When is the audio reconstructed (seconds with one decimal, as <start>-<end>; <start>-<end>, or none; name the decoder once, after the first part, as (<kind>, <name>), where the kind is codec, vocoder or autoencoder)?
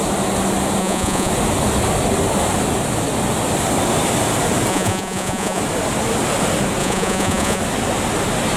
0.8-1.3 (vocoder, Vocos); 4.7-5.6; 6.8-7.6